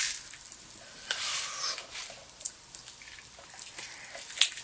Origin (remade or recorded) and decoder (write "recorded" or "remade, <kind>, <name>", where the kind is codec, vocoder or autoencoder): recorded